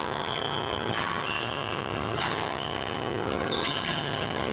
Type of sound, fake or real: fake